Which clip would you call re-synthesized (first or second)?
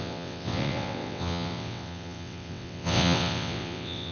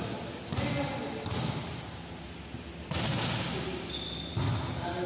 first